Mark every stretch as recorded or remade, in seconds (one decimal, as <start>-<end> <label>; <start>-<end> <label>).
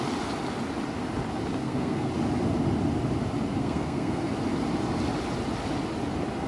0.0-1.6 recorded; 1.6-2.1 remade; 2.1-3.6 recorded; 3.6-4.2 remade; 4.2-6.5 recorded